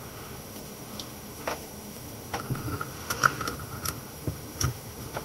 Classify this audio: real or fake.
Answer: fake